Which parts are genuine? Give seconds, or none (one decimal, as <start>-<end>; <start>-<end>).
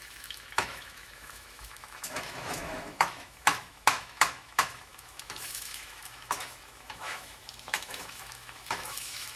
none